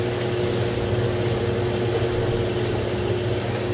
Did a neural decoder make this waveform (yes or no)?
no